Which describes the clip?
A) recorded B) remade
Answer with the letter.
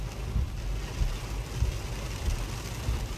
A